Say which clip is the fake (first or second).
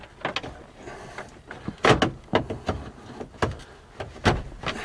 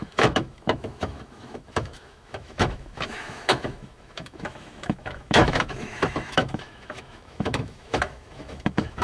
second